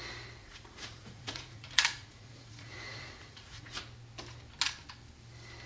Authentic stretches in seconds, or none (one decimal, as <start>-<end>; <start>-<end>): 0.0-0.4; 3.8-5.7